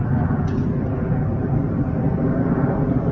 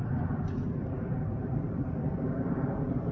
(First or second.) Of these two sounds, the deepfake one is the second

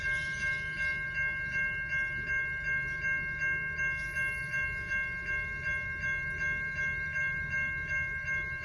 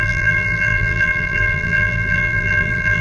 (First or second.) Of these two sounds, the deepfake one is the second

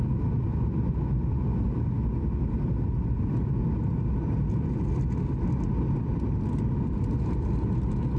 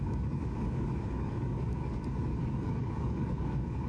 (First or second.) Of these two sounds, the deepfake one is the second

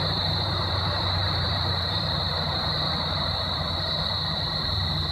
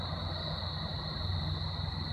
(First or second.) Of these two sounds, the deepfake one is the first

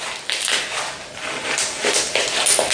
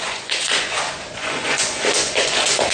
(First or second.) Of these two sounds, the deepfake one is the second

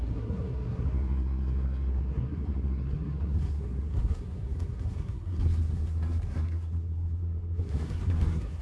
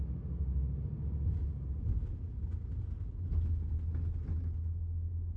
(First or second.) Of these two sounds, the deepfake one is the first